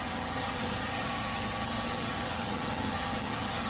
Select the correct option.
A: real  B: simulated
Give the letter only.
B